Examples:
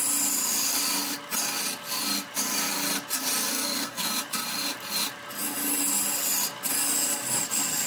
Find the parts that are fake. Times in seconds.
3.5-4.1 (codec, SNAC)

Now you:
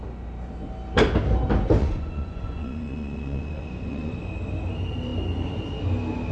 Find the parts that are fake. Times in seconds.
1.8-4.1 (vocoder, Vocos)

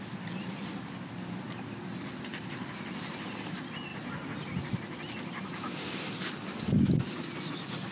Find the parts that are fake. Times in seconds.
0.0-3.9 (vocoder, BigVGAN v2); 7.5-7.9

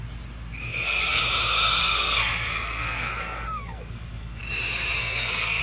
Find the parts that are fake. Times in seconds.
0.7-1.2 (codec, SNAC); 1.8-4.4; 5.0-5.6

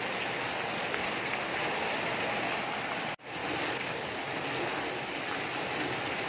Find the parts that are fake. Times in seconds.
0.9-1.5 (codec, SNAC)

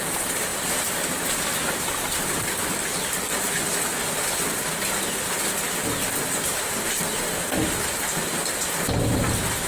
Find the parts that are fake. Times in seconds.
none

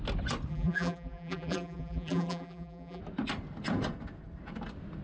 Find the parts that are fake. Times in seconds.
0.5-3.0 (vocoder, BigVGAN v2)